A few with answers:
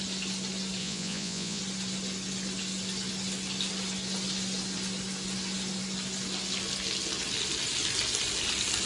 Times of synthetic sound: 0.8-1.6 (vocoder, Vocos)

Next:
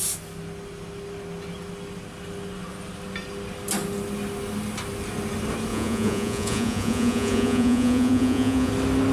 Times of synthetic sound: 5.7-8.7 (vocoder, Vocos)

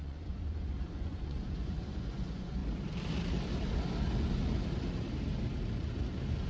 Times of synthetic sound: 0.0-2.6 (vocoder, Vocos)

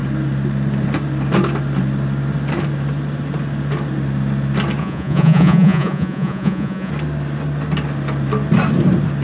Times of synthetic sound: 4.8-6.9 (vocoder, Vocos)

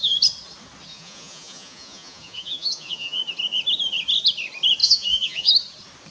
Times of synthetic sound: 0.9-3.2 (vocoder, Vocos); 4.8-5.5